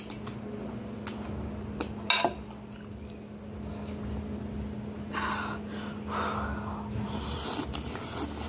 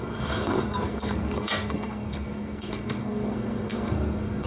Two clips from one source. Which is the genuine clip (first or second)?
first